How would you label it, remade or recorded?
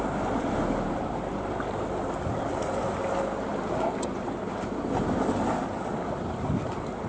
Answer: recorded